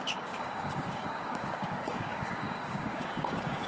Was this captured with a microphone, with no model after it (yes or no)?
no